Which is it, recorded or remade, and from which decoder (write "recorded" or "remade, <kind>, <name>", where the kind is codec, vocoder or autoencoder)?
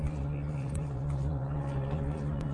remade, vocoder, Vocos